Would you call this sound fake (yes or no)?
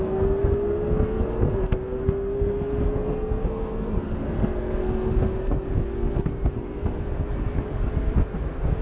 yes